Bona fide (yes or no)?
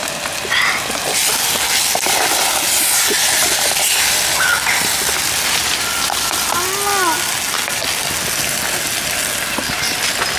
yes